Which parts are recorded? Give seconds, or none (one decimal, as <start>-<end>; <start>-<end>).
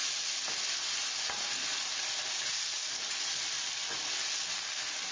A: 0.0-5.1